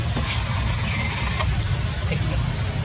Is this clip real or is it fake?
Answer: real